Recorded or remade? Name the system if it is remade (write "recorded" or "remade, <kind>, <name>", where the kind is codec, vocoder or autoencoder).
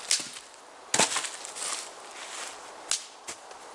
recorded